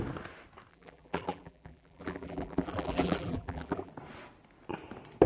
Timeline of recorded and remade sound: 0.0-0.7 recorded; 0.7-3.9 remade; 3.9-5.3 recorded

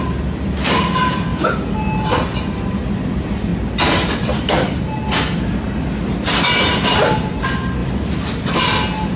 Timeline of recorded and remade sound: 0.0-7.8 recorded; 7.8-8.6 remade; 8.6-9.2 recorded

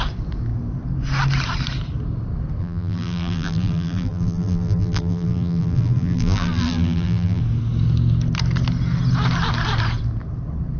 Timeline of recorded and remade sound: 0.0-2.6 recorded; 2.6-7.4 remade; 7.4-10.8 recorded

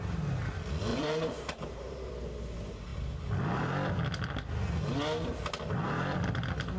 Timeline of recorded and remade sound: 0.0-0.9 recorded; 0.9-2.1 remade; 2.1-6.8 recorded

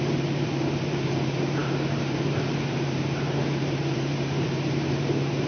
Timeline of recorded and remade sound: 0.0-5.5 remade

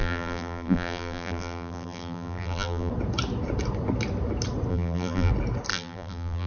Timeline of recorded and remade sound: 0.0-2.9 remade; 2.9-4.7 recorded; 4.7-5.3 remade; 5.3-5.7 recorded; 5.7-6.5 remade